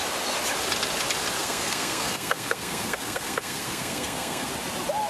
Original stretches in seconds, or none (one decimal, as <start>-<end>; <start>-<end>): 0.0-1.4; 4.5-5.1